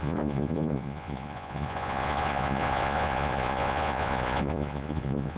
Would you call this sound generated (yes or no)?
yes